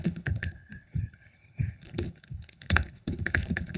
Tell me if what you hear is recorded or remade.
remade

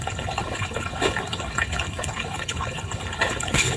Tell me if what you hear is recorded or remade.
remade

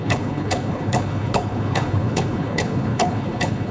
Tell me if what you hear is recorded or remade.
remade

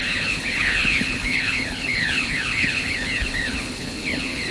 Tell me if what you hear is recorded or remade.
remade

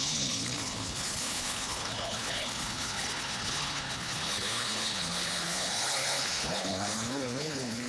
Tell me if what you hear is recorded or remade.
remade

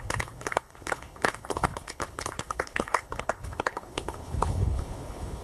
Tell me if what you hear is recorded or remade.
remade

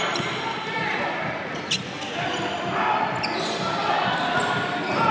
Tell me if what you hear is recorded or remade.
recorded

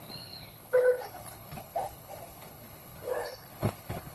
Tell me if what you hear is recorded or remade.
remade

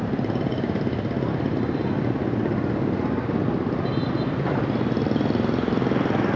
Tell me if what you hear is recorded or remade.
recorded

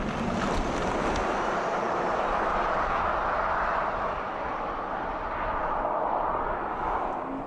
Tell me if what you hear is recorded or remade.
recorded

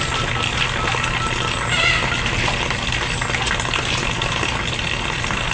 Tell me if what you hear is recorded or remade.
recorded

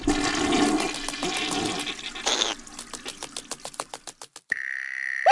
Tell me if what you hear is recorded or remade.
recorded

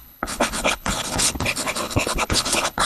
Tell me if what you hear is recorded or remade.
remade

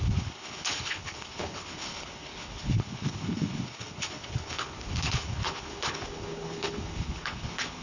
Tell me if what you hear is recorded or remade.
remade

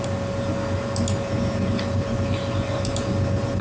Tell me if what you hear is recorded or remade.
recorded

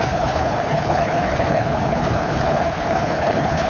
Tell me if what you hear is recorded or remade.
remade